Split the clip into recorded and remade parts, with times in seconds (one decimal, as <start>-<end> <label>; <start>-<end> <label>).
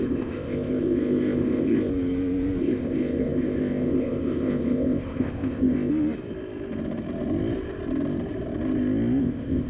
0.0-1.9 remade; 1.9-2.6 recorded; 2.6-5.9 remade; 5.9-9.2 recorded; 9.2-9.7 remade